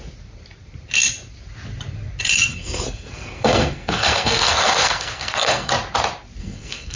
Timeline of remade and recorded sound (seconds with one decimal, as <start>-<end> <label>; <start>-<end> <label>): 0.0-2.5 recorded; 2.5-5.7 remade; 5.7-6.4 recorded; 6.4-7.0 remade